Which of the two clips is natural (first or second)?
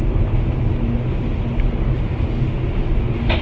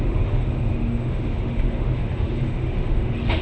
first